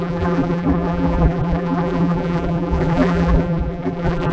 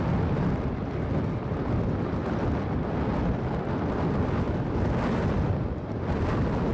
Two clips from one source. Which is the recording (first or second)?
second